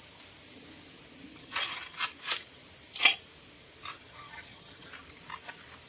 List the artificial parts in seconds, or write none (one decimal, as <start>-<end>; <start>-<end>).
1.3-2.0; 3.9-4.9

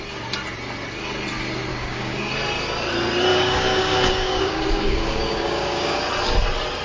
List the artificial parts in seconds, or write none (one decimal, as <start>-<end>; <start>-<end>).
1.7-2.3; 3.3-6.0

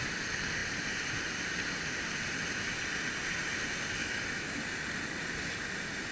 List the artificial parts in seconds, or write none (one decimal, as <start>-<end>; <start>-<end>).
4.0-4.5